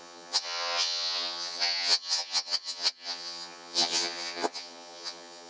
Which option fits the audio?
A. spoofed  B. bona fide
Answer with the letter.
A